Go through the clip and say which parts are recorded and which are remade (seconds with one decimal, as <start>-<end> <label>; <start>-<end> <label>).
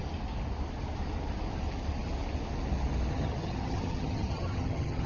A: 0.0-3.1 recorded; 3.1-5.1 remade